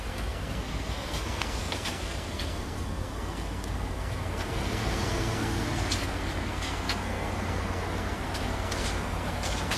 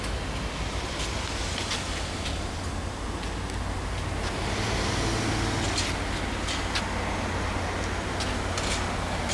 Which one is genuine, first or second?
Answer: second